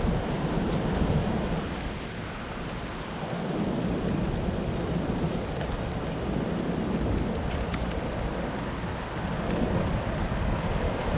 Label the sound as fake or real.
real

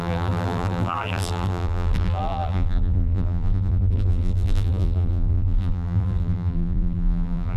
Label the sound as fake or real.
fake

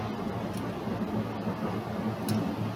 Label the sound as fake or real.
real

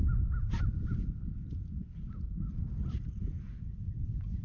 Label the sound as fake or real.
real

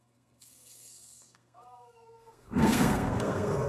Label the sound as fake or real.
fake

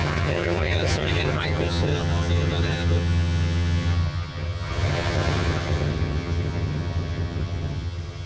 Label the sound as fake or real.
fake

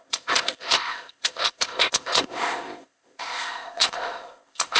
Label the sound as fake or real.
fake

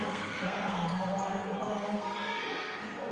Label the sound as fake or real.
fake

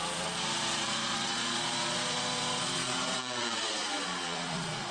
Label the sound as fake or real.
fake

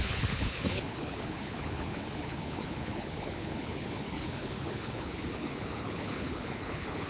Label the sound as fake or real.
fake